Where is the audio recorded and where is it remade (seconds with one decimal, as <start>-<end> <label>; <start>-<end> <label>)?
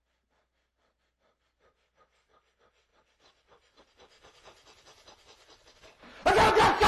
0.0-6.9 recorded